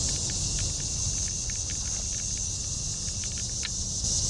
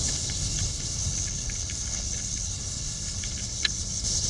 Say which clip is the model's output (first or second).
second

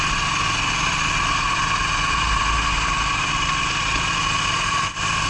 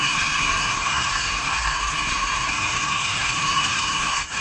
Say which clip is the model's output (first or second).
second